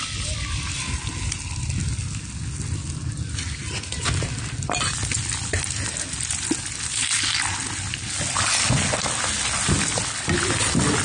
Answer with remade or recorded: recorded